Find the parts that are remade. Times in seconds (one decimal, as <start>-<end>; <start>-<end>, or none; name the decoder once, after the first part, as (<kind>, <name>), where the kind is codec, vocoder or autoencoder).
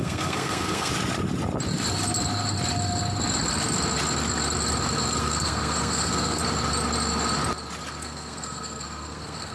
0.0-0.9 (codec, SNAC); 5.2-6.4; 8.0-9.5